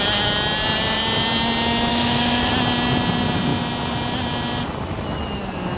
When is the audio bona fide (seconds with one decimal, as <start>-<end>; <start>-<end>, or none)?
0.0-1.9; 2.5-5.8